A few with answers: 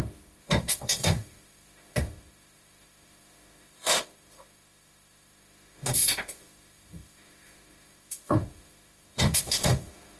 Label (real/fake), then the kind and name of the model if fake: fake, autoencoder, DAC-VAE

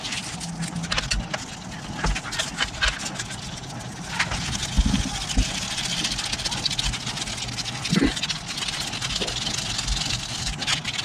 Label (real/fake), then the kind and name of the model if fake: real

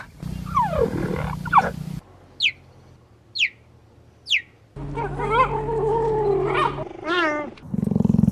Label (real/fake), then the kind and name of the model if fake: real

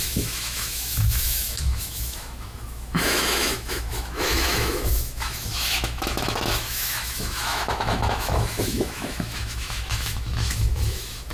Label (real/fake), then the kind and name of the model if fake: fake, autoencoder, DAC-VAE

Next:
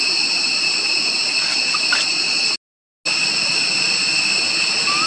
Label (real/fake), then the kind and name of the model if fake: real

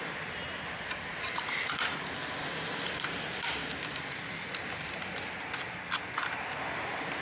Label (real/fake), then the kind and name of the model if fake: real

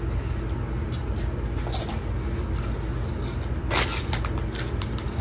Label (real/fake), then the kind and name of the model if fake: real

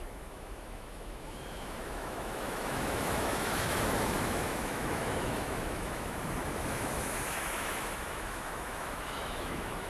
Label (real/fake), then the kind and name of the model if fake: fake, autoencoder, DAC-VAE